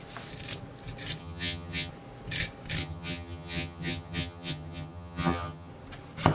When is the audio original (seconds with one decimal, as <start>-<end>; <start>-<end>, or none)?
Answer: 0.0-1.2; 1.9-2.8; 5.7-6.3